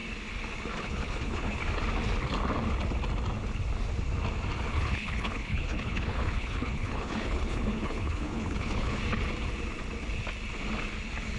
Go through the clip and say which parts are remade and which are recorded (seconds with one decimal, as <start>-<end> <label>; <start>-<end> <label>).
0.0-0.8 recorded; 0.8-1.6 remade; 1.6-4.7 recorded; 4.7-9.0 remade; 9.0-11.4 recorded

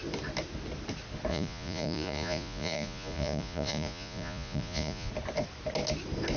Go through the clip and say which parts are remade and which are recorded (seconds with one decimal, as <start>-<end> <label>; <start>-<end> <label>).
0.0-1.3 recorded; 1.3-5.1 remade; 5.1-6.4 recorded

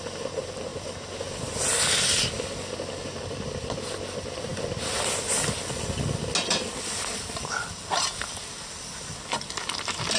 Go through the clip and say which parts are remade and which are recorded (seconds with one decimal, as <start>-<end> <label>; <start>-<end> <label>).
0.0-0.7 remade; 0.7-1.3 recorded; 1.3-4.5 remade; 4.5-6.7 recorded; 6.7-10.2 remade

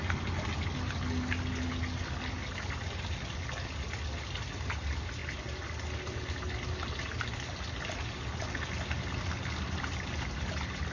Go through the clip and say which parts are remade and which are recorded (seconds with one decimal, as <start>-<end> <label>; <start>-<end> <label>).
0.0-10.9 recorded